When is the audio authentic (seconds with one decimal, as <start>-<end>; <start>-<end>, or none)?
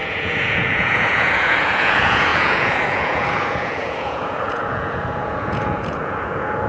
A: none